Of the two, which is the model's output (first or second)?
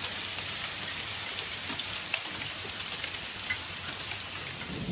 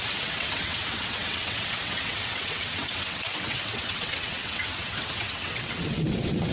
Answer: second